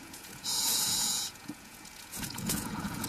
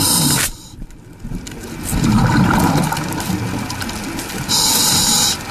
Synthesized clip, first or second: first